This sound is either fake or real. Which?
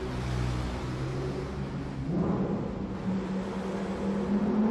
real